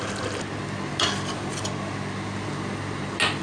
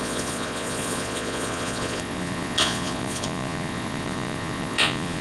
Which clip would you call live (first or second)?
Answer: first